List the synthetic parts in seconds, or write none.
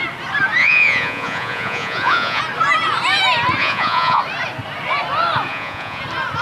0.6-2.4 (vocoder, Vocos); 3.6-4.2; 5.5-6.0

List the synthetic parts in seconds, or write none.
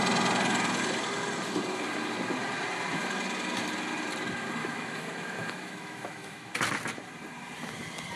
4.6-6.5 (autoencoder, DAC-VAE)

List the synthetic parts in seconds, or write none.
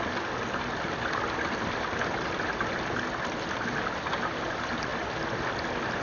none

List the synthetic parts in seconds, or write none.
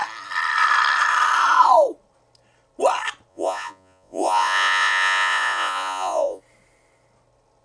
3.3-6.4 (vocoder, Vocos)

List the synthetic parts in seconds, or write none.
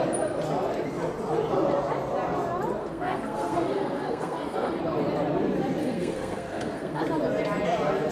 2.8-4.8 (codec, SNAC); 5.8-7.0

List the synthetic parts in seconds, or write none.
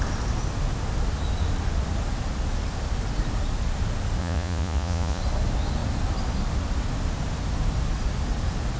4.2-5.2 (vocoder, Vocos)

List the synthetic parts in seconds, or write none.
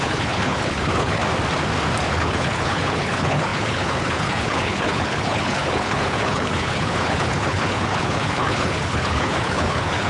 0.0-1.2 (codec, HILCodec); 2.1-10.1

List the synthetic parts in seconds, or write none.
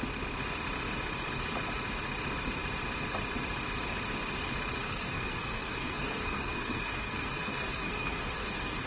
4.8-8.9 (codec, SNAC)